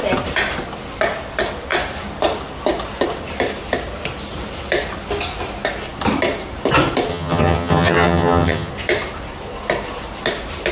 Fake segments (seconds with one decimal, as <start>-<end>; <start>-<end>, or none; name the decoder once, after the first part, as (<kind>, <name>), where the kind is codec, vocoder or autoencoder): 7.1-8.7 (vocoder, HiFi-GAN)